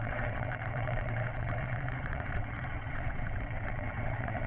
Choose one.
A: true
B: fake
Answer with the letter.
B